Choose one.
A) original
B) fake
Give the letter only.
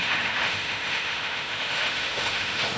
B